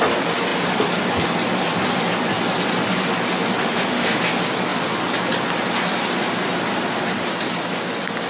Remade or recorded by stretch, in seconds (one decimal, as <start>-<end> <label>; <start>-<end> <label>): 0.0-3.6 recorded; 3.6-4.2 remade; 4.2-8.3 recorded